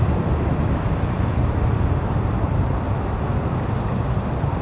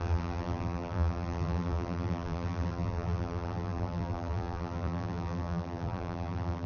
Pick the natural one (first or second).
first